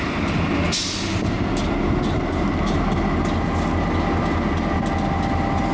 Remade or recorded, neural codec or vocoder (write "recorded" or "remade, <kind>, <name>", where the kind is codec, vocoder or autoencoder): recorded